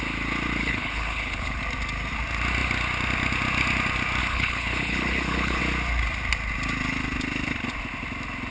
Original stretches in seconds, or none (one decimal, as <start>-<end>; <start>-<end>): 0.0-0.6; 1.6-4.2; 5.6-8.5